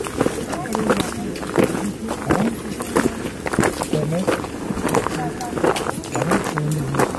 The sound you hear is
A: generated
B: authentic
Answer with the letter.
B